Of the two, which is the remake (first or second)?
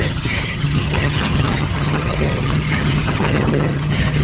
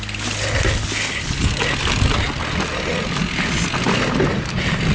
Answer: first